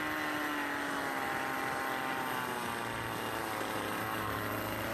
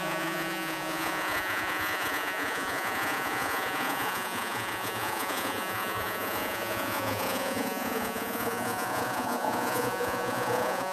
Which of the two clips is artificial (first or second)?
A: second